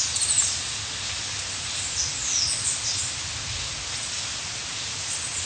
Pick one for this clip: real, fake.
real